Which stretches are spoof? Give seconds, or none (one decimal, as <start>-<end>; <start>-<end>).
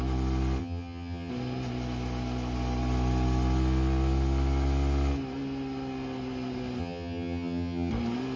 0.6-1.3; 6.8-7.9